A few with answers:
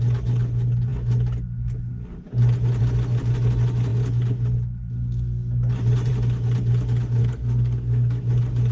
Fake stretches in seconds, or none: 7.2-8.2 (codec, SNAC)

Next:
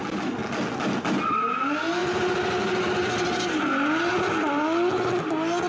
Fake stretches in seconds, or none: none

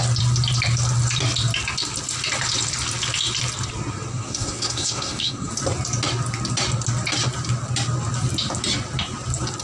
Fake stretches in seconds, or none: 4.1-5.5 (codec, SNAC)